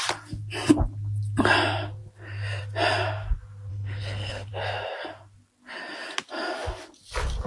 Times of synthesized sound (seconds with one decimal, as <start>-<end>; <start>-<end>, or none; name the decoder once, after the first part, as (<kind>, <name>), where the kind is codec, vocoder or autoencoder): 3.7-4.5 (codec, HILCodec)